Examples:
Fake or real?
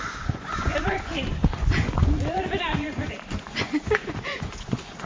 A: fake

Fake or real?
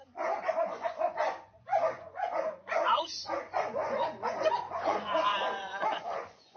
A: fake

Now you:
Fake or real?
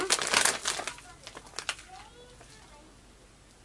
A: real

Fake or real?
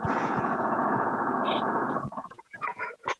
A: fake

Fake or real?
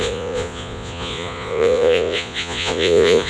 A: fake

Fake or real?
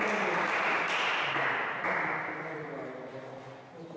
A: real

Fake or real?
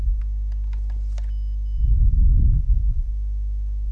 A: real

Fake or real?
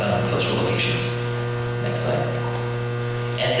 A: real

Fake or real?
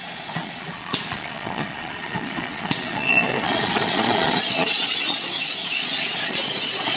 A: fake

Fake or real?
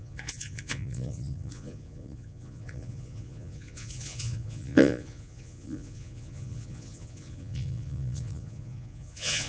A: fake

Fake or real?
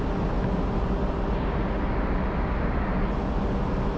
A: real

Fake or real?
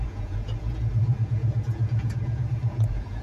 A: fake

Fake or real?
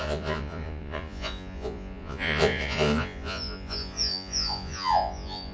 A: fake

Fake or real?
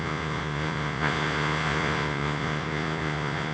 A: fake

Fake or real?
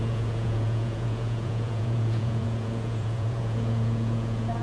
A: fake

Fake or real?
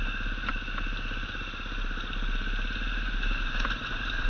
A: real